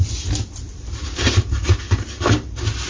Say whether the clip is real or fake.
real